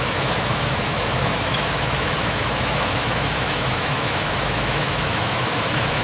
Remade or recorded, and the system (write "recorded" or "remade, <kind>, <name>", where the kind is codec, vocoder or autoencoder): remade, autoencoder, DAC-VAE